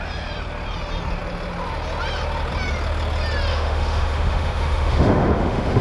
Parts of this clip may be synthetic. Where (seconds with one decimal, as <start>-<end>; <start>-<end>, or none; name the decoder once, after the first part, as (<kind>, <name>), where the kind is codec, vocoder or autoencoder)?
3.5-5.8 (autoencoder, DAC-VAE)